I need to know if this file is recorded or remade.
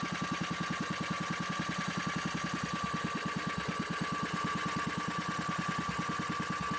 recorded